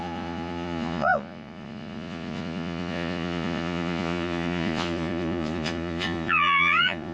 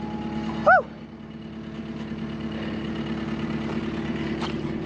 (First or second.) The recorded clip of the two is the second